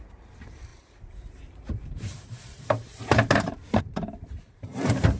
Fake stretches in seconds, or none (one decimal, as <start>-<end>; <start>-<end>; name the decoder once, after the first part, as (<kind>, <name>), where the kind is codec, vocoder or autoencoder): 0.0-5.2 (vocoder, BigVGAN v2)